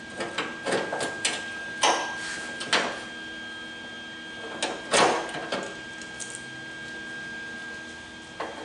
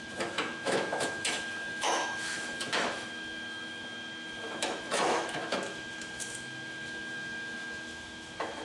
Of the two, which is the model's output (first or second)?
second